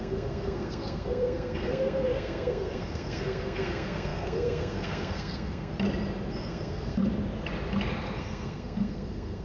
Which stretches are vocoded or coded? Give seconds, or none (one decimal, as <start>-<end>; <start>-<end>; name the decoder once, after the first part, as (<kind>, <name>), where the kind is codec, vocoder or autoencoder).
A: 0.0-5.7 (codec, SNAC); 6.3-7.0; 8.2-9.4